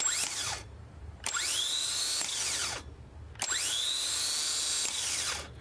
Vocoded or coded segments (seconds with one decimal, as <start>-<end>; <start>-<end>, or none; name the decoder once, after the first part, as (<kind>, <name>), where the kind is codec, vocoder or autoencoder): 0.4-1.6 (vocoder, BigVGAN v2)